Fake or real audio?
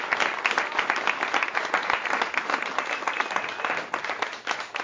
real